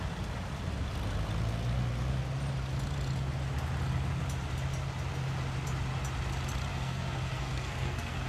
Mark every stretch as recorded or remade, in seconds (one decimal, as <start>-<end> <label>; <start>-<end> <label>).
0.0-6.7 recorded; 6.7-8.3 remade